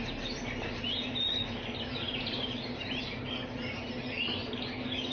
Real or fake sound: real